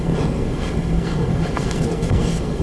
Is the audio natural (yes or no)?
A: no